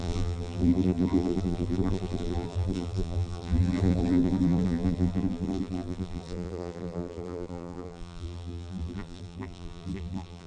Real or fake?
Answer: fake